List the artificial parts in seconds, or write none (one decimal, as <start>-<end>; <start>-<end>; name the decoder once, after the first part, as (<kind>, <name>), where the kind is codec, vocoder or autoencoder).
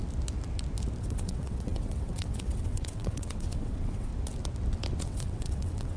1.0-4.1 (vocoder, WaveNeXt); 5.0-6.0